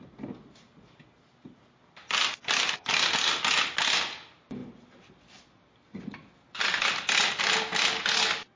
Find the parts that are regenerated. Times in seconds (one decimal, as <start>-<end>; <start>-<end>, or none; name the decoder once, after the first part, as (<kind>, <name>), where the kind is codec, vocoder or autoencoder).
none